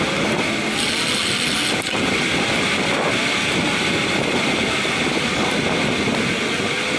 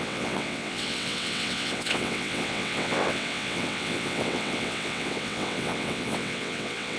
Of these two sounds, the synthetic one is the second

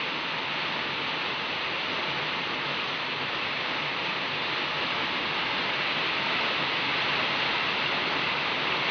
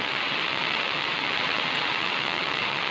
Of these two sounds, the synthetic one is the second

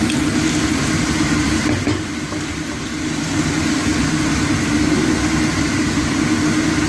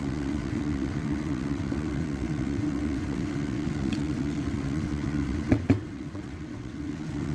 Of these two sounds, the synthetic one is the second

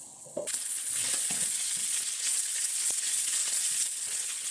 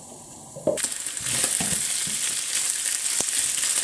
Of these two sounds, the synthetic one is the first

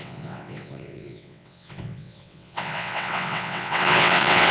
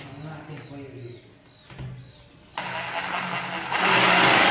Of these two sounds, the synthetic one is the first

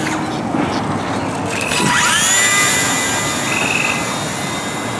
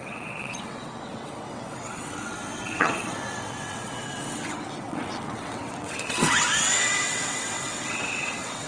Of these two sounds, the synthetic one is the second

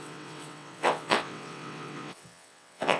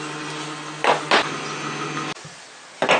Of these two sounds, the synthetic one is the first